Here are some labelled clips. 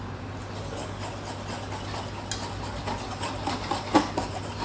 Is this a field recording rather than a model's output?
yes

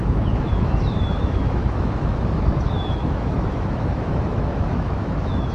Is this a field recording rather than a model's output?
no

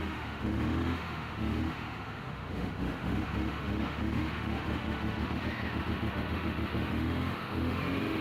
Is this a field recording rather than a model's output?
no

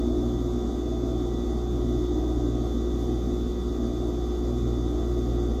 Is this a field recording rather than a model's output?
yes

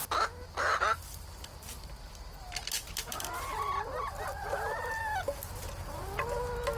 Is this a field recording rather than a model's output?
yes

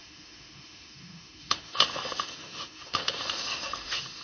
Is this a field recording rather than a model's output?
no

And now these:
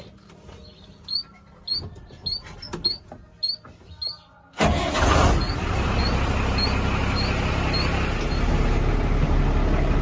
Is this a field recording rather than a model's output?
yes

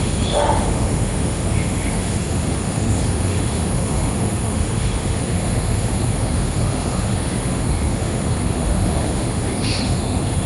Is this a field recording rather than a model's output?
no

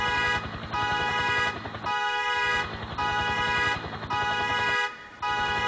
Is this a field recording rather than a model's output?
yes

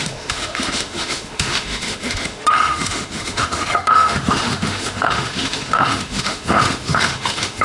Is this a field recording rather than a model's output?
no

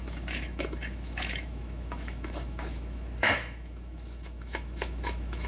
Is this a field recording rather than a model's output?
no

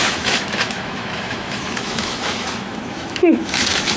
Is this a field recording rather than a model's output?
no